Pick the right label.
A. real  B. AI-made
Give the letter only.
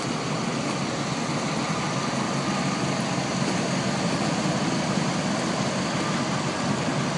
A